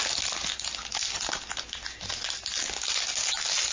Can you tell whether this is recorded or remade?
recorded